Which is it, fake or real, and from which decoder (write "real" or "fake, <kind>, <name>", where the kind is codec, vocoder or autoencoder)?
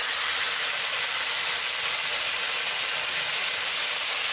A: real